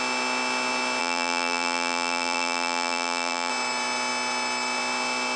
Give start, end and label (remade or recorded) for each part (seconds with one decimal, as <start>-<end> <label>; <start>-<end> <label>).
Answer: 0.0-1.0 recorded; 1.0-3.5 remade; 3.5-5.4 recorded